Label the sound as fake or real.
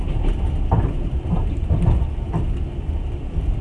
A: real